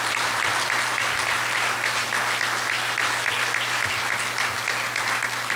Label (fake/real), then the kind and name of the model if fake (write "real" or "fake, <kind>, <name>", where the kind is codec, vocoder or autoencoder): real